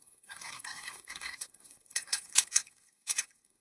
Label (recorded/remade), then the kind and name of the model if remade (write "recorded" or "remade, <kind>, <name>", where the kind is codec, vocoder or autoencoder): remade, codec, SNAC